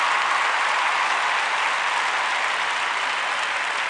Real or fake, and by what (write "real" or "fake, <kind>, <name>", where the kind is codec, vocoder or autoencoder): real